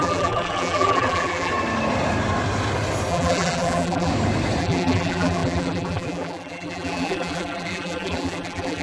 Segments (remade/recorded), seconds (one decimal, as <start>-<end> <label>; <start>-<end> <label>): 0.0-1.5 remade; 1.5-3.1 recorded; 3.1-4.1 remade; 4.1-4.6 recorded; 4.6-8.8 remade